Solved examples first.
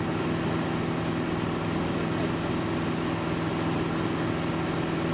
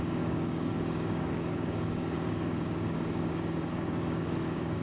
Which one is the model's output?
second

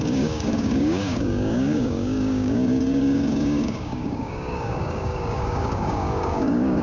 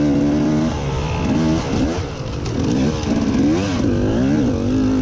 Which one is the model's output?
first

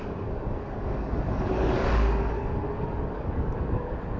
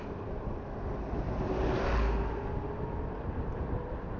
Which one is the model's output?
first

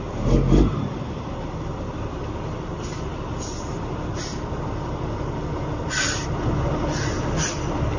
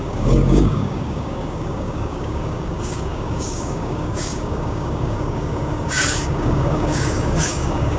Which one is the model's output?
second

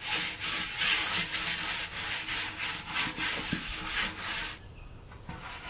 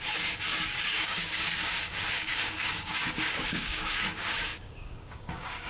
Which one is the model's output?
second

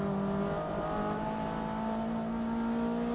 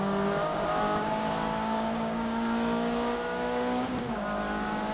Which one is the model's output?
second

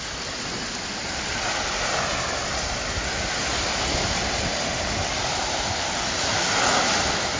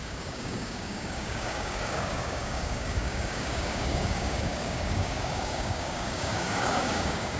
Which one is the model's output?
second